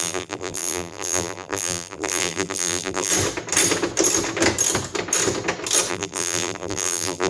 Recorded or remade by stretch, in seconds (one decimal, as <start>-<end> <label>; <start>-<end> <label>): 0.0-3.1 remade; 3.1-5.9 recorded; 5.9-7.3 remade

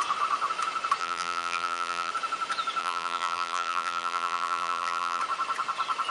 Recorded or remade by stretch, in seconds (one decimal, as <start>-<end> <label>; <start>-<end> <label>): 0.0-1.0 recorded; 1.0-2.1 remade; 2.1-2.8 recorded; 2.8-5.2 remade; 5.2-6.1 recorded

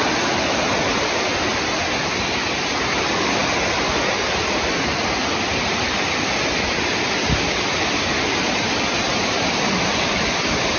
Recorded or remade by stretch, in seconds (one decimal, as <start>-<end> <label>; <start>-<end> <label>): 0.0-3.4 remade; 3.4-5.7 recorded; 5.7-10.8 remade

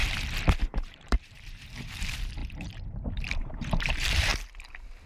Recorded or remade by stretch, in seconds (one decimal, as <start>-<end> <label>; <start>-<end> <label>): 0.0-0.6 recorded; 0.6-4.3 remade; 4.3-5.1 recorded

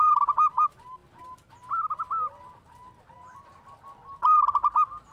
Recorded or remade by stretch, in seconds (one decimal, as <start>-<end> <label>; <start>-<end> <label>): 0.0-5.1 recorded

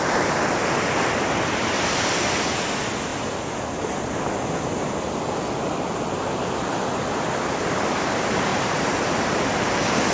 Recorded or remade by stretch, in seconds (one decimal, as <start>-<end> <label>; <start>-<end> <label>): 0.0-8.5 recorded; 8.5-9.0 remade; 9.0-10.1 recorded